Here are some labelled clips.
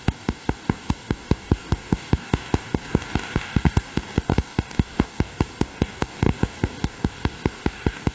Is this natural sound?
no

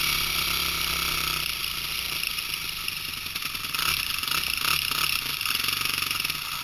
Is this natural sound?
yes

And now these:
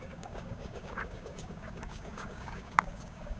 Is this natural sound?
no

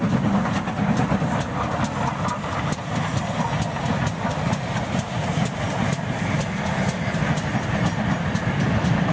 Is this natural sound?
yes